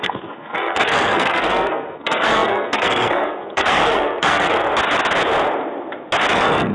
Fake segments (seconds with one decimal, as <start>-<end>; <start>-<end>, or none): 0.0-4.7; 6.3-6.7